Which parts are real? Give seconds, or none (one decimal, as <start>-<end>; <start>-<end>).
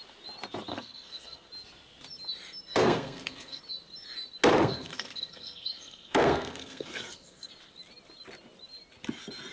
0.0-0.7; 1.5-2.7; 3.6-4.5; 7.5-9.5